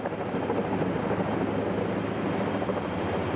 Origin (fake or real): real